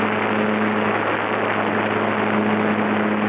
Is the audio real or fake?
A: real